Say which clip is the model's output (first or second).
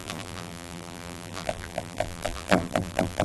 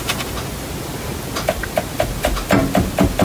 first